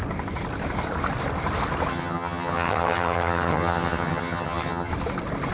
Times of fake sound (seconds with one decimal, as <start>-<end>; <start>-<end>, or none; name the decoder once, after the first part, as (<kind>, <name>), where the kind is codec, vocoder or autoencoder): 1.9-4.9 (vocoder, HiFi-GAN)